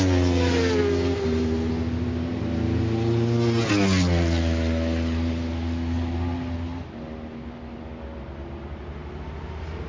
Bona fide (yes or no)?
yes